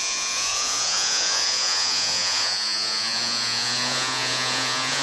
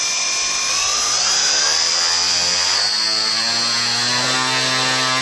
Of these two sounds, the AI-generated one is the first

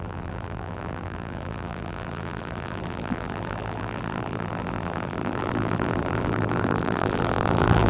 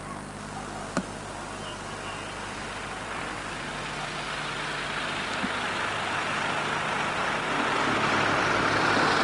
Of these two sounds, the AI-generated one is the first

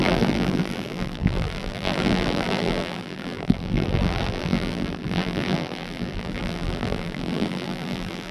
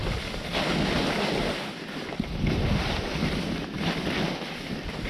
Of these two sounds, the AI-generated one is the first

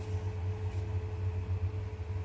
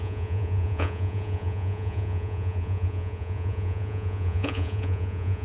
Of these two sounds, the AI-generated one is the second